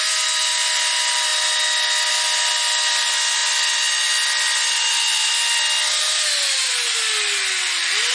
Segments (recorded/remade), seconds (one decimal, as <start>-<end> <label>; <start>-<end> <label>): 0.0-8.1 recorded

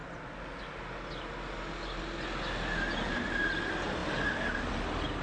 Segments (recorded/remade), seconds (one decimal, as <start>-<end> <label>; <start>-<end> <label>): 0.0-5.2 recorded

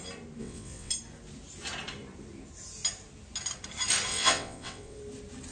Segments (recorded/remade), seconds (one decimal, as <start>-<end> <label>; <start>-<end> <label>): 0.0-0.4 recorded; 0.4-0.9 remade; 0.9-4.1 recorded; 4.1-5.0 remade; 5.0-5.5 recorded

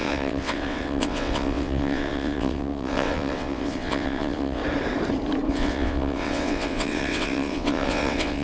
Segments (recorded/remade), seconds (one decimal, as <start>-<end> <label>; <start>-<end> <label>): 0.0-4.6 remade; 4.6-5.5 recorded; 5.5-8.4 remade

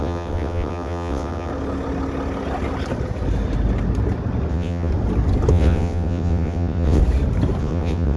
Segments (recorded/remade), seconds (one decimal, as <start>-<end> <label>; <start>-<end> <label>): 0.0-1.5 remade; 1.5-4.5 recorded; 4.5-4.9 remade; 4.9-5.5 recorded; 5.5-7.0 remade; 7.0-7.6 recorded; 7.6-8.2 remade

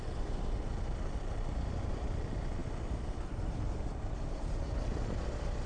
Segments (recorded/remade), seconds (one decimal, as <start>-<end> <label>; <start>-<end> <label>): 0.0-5.7 recorded